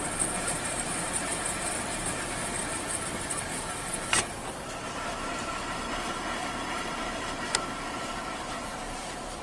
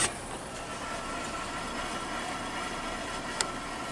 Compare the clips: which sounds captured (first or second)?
second